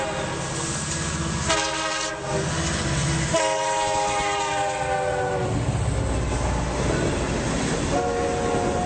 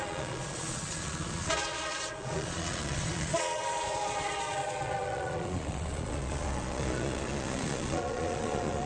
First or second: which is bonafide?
first